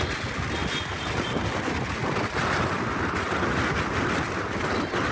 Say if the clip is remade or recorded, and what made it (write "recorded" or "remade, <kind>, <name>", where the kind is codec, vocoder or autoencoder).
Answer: recorded